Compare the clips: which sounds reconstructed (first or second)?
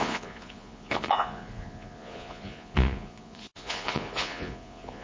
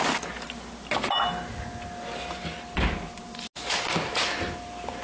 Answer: first